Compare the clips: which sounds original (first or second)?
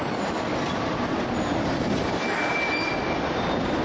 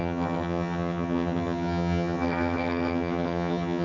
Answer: first